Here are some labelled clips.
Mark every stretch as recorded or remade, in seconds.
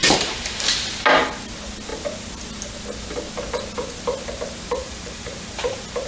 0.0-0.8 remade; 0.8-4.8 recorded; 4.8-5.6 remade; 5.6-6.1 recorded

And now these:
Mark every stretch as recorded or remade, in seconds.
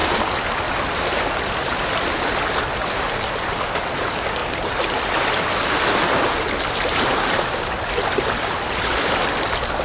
0.0-9.8 recorded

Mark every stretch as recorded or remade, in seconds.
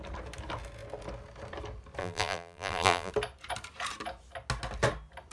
0.0-2.0 recorded; 2.0-3.1 remade; 3.1-5.3 recorded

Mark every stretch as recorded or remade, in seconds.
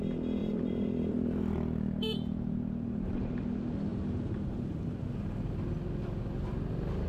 0.0-0.4 recorded; 0.4-3.4 remade; 3.4-3.9 recorded; 3.9-5.1 remade; 5.1-7.1 recorded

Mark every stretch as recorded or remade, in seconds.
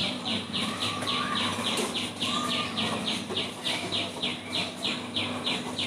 0.0-0.9 remade; 0.9-1.5 recorded; 1.5-2.1 remade; 2.1-5.9 recorded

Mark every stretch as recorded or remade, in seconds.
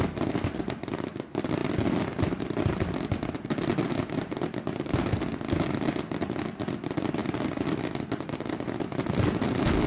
0.0-1.6 recorded; 1.6-3.9 remade; 3.9-7.2 recorded; 7.2-7.8 remade; 7.8-9.9 recorded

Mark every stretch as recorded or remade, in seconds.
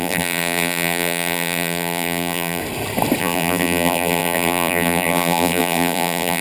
0.0-2.6 remade; 2.6-3.2 recorded; 3.2-6.4 remade